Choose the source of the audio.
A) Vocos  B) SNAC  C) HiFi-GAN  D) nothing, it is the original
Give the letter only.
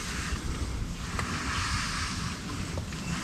D